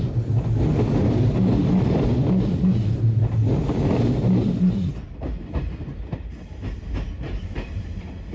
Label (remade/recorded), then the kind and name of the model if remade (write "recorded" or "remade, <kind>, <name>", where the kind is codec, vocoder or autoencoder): recorded